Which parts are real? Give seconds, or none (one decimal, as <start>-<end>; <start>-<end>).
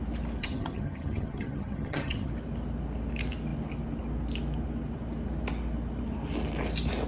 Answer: 0.0-0.4; 2.3-7.1